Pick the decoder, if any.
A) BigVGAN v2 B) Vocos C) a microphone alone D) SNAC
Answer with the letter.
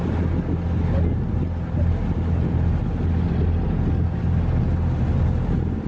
C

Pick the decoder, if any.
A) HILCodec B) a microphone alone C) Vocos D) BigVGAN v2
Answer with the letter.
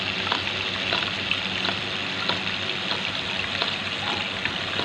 D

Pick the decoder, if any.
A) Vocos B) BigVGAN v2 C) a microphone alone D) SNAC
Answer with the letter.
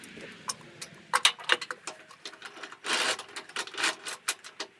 C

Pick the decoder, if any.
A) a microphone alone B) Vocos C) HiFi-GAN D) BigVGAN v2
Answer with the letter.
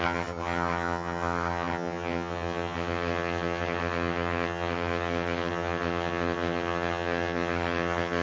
C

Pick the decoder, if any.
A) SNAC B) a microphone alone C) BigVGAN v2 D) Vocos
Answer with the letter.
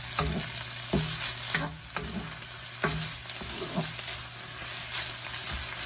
B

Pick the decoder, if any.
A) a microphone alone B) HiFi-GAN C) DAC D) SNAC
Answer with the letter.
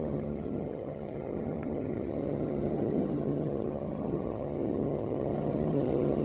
B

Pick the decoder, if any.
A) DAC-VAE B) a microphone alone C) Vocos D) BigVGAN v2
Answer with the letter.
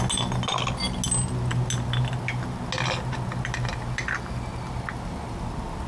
B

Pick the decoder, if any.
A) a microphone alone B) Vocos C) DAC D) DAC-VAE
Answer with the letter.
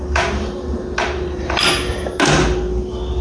A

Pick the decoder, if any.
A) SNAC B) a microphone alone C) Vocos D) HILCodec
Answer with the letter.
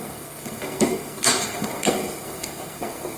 A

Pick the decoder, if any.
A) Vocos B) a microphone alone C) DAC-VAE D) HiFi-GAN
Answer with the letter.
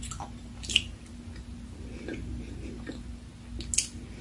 B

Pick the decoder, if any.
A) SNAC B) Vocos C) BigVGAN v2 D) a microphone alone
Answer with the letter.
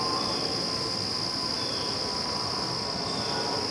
D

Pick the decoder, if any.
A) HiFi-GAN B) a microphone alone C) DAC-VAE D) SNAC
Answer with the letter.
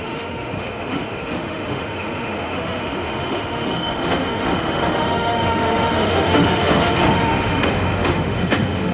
C